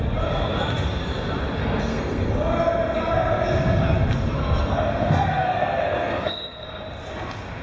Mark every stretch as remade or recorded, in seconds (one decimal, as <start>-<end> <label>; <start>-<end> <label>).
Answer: 0.0-1.6 recorded; 1.6-2.3 remade; 2.3-4.4 recorded; 4.4-6.8 remade; 6.8-7.6 recorded